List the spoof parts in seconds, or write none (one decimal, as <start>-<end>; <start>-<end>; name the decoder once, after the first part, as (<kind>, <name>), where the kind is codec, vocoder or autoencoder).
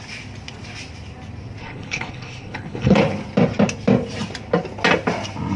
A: 1.6-3.0 (codec, HILCodec)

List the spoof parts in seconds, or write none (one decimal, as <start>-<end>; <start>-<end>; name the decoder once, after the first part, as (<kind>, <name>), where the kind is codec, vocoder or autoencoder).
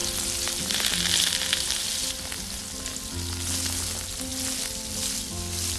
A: none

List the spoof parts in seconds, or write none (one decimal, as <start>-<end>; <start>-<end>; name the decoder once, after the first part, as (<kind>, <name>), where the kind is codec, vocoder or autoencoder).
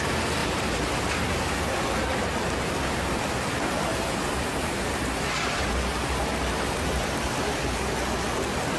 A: 0.4-1.7 (vocoder, BigVGAN v2); 3.9-7.8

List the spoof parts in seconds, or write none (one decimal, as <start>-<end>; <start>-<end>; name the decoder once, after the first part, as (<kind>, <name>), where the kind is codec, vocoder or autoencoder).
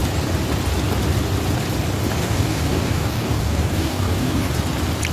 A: 2.2-4.5 (codec, DAC)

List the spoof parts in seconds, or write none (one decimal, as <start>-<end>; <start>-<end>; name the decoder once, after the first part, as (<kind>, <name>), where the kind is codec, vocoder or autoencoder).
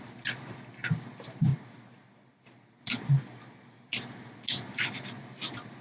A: none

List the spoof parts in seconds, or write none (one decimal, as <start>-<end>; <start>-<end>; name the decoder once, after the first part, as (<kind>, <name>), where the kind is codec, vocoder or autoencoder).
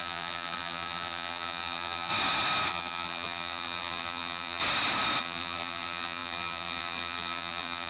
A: 0.0-2.1 (vocoder, BigVGAN v2); 2.7-4.6; 5.2-7.9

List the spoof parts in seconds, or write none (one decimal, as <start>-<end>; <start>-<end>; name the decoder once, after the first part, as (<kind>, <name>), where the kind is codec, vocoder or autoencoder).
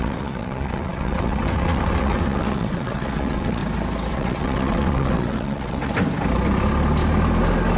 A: 0.0-3.6 (vocoder, WaveNeXt); 4.1-5.9